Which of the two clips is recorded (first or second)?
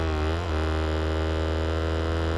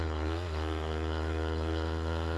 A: first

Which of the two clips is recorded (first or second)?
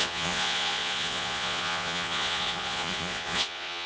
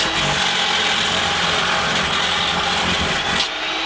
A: second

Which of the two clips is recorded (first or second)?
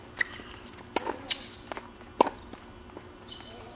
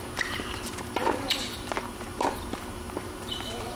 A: first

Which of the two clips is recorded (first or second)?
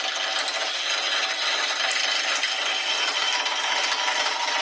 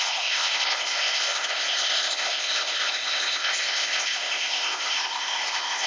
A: first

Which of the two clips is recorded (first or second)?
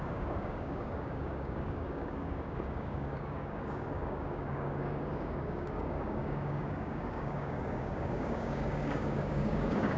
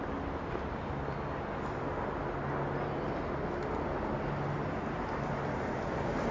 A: second